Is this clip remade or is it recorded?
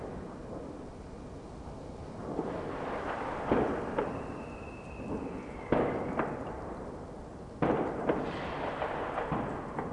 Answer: recorded